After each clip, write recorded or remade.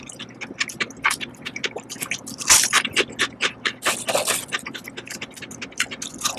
recorded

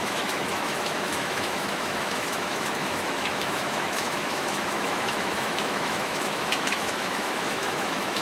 remade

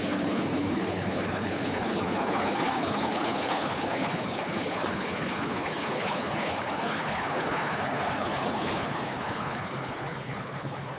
remade